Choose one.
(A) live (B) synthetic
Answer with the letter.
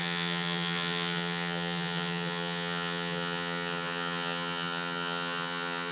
B